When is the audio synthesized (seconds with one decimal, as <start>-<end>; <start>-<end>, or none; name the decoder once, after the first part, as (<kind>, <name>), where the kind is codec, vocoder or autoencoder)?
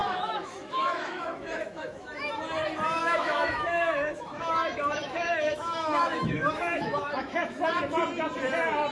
0.0-2.4 (autoencoder, DAC-VAE); 3.0-7.8